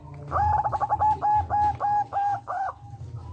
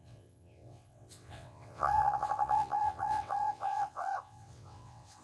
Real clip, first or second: first